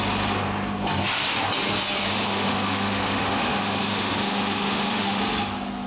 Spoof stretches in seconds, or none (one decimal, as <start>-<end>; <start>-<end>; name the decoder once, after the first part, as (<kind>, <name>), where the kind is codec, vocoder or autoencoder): 2.1-5.2 (autoencoder, DAC-VAE)